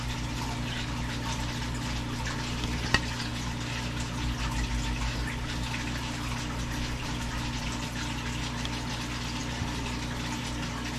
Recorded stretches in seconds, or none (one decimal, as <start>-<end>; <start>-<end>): 0.0-11.0